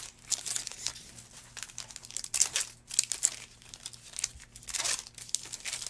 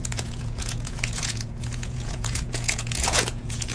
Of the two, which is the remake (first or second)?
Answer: second